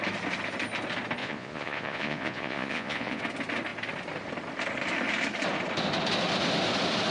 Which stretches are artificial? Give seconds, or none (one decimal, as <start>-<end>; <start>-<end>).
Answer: 1.2-3.2

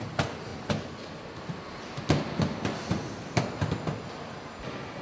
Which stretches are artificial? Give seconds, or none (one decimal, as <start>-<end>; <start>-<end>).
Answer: none

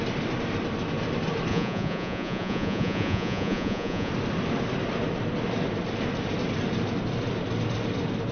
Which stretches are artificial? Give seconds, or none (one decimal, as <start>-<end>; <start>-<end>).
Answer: 1.5-4.1